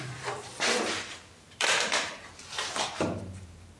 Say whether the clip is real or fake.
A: fake